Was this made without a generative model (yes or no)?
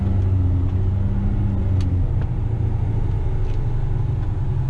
yes